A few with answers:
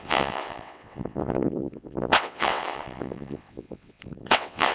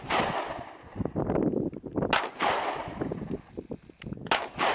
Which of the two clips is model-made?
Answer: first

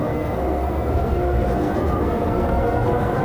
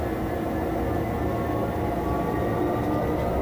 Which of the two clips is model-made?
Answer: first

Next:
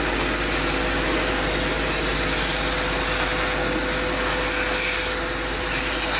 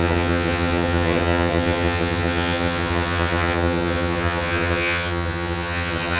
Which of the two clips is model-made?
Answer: second